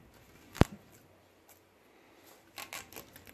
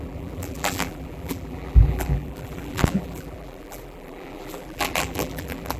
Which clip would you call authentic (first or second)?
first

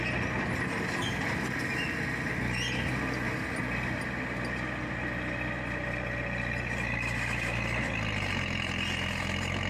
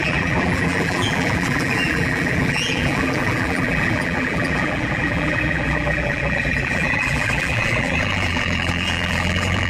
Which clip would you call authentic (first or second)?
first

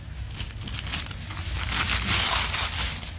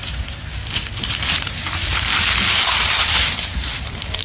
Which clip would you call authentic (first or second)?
first